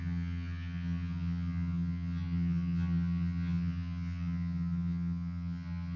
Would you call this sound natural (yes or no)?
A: no